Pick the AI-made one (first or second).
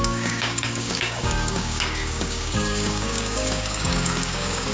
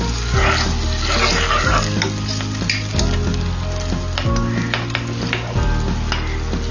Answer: first